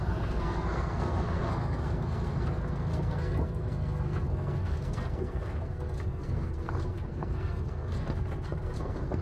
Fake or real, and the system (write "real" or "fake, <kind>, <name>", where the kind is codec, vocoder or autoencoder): fake, codec, SNAC